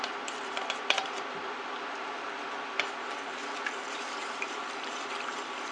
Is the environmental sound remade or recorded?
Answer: remade